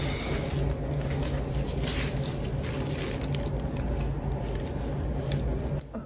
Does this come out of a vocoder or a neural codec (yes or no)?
no